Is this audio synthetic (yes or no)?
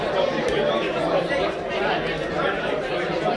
yes